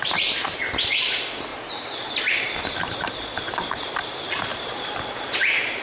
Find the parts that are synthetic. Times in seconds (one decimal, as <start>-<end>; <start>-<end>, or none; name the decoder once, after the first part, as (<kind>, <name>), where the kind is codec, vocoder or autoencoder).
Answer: 1.5-5.0 (vocoder, BigVGAN v2)